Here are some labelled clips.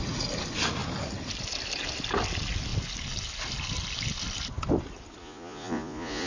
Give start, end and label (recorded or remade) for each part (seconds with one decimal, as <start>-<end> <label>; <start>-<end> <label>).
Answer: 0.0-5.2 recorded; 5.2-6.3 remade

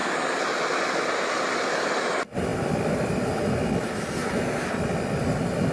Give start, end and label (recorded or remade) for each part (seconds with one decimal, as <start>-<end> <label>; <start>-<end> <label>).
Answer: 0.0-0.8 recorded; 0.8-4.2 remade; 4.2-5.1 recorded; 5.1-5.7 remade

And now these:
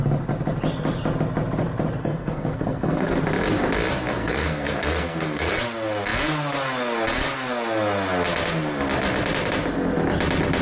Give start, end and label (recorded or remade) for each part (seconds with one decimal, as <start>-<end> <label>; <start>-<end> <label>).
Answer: 0.0-2.0 recorded; 2.0-3.2 remade; 3.2-4.1 recorded; 4.1-5.6 remade; 5.6-10.6 recorded